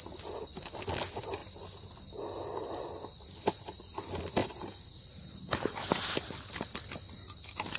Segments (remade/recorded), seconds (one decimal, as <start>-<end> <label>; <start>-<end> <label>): 0.0-4.4 recorded; 4.4-6.4 remade; 6.4-7.8 recorded